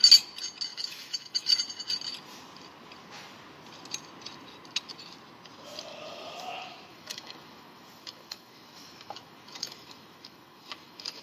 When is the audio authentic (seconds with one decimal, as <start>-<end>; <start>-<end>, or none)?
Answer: 0.0-0.7; 1.6-6.9

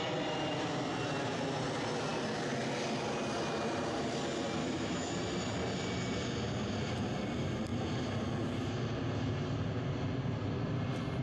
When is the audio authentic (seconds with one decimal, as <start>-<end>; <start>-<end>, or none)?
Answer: 0.0-4.6; 5.1-11.2

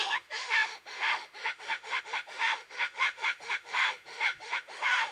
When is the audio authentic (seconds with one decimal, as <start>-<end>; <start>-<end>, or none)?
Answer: none

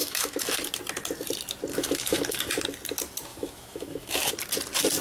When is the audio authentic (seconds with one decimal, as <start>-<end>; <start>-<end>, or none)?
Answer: 0.6-1.7; 2.5-3.3; 4.3-5.0

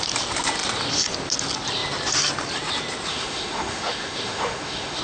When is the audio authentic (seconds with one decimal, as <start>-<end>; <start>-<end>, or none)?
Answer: 0.0-3.1

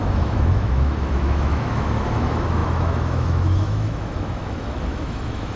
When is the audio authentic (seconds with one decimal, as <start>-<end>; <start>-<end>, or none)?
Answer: none